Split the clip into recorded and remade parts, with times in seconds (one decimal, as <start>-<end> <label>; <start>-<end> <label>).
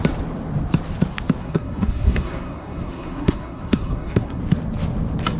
0.0-1.4 recorded; 1.4-4.4 remade; 4.4-5.4 recorded